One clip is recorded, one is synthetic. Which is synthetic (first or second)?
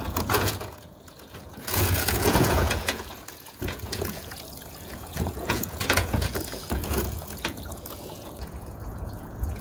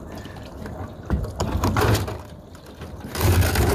first